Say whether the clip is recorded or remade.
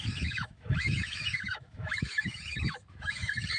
remade